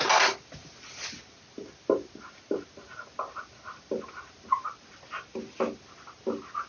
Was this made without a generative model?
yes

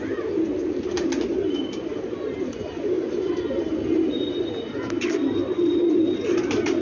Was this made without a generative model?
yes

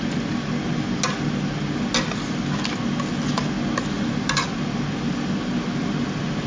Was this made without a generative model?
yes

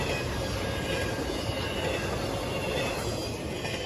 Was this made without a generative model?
yes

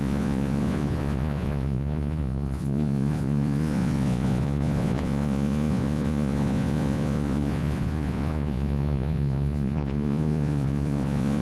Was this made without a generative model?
no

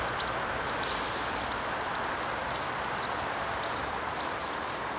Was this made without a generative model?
yes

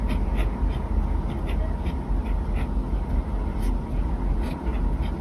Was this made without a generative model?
yes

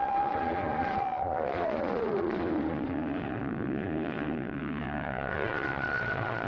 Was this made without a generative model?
no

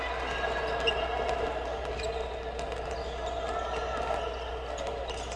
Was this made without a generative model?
yes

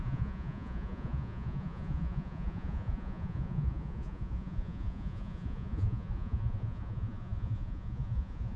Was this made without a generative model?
no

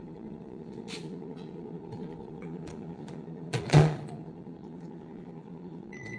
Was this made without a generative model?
no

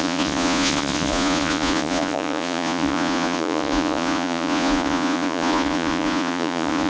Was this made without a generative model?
no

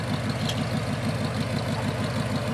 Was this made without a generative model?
yes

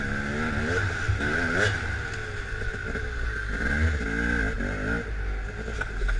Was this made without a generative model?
yes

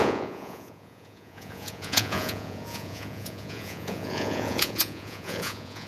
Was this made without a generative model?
no